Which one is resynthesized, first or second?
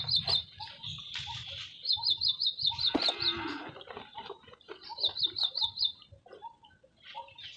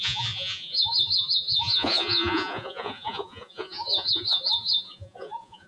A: second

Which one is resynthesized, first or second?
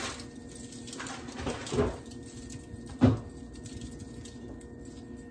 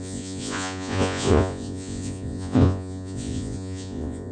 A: second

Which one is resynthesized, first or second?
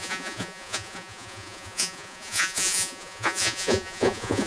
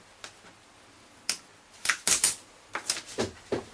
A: first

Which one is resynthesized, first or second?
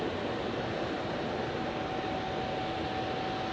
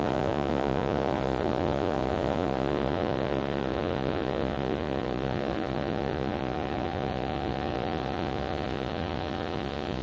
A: second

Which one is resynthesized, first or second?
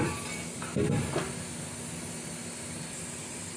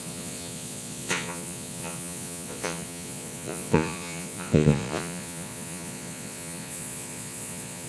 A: second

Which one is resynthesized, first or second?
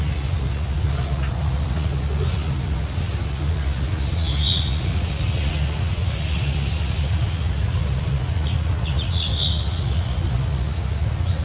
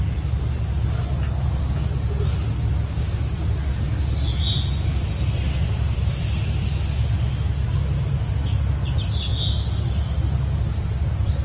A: first